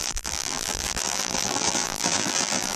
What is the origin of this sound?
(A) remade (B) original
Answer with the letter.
A